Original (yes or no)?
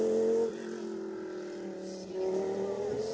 yes